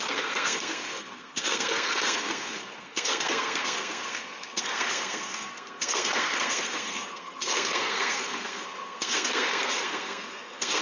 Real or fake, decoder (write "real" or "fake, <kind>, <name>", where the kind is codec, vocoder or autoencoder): fake, codec, SNAC